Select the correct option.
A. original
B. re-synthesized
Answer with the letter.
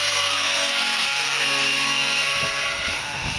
B